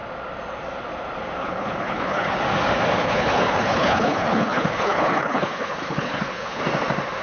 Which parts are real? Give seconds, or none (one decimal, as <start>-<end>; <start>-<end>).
0.0-1.4; 2.4-3.0; 6.6-7.2